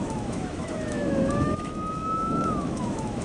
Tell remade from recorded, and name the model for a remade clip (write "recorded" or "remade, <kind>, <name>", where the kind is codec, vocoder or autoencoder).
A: remade, autoencoder, DAC-VAE